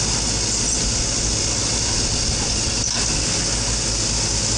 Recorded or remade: recorded